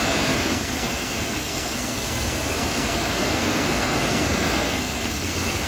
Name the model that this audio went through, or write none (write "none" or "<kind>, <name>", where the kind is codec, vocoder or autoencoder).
codec, SNAC